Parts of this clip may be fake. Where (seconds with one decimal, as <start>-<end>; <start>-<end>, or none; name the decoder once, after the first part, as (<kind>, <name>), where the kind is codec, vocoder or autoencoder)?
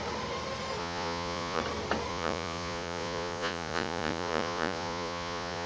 0.8-1.6 (vocoder, Vocos); 2.1-5.7